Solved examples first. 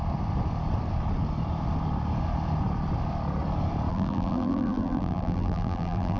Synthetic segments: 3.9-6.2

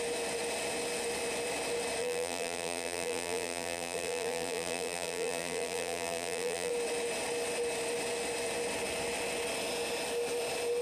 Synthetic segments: 2.0-6.7